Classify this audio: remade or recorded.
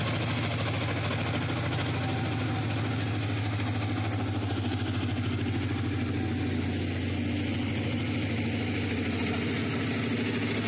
recorded